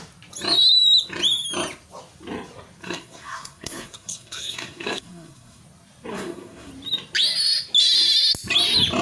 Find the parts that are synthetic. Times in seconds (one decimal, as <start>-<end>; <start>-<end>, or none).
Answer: 2.8-5.6; 6.1-6.7